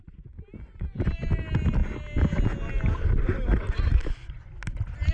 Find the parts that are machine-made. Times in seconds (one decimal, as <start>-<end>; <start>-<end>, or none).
none